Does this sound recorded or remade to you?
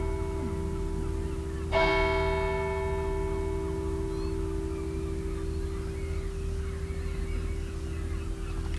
recorded